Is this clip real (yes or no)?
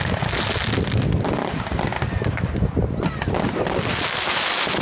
yes